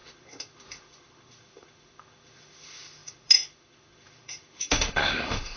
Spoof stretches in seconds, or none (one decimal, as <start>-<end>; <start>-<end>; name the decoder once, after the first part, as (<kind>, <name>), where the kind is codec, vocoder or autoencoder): 0.0-5.6 (autoencoder, DAC-VAE)

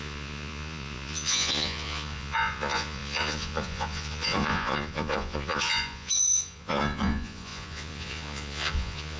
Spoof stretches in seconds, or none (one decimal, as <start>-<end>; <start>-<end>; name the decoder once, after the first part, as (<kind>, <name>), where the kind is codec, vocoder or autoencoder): 0.0-9.2 (vocoder, Vocos)